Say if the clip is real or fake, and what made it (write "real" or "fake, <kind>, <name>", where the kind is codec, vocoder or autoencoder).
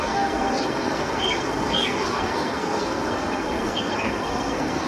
fake, codec, SNAC